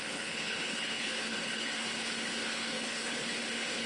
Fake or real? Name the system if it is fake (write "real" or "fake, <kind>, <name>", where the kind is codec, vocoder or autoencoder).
fake, codec, HILCodec